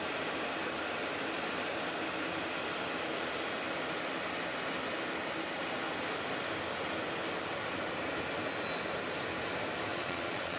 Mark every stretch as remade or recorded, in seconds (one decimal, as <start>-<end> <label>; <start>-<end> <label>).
0.0-9.9 recorded; 9.9-10.6 remade